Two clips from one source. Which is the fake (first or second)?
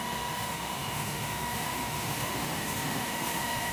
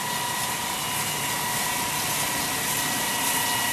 first